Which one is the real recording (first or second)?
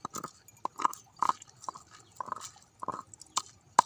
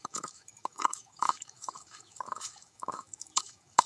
first